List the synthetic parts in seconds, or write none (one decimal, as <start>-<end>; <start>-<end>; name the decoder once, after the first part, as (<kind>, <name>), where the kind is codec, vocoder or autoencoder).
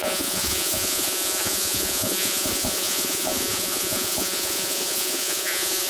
0.0-5.9 (vocoder, Vocos)